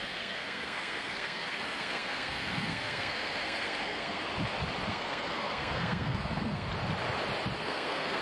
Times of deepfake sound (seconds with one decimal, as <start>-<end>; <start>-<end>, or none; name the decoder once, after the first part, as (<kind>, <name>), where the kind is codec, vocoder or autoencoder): 0.0-4.3 (codec, SNAC); 4.9-6.7; 7.6-8.2